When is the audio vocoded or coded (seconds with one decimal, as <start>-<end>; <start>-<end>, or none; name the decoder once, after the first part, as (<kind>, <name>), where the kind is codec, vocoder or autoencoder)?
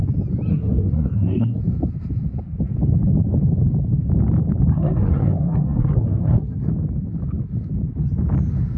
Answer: 0.5-1.6 (codec, SNAC); 4.7-6.7